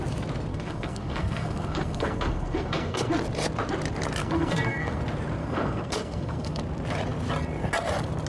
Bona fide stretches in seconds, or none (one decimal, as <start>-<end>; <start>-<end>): 0.0-0.5; 3.1-4.2; 5.0-5.4; 6.6-8.3